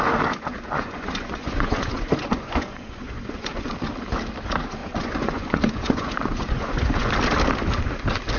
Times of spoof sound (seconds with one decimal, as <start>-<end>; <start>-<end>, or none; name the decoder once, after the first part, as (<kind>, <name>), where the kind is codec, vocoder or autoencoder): 0.5-3.7 (vocoder, Vocos); 4.8-7.1